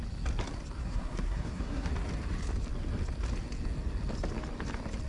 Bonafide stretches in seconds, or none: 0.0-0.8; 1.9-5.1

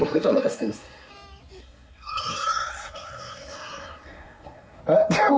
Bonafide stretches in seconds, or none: 1.1-1.6; 4.8-5.4